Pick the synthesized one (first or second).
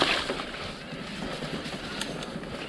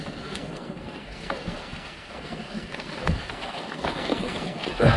second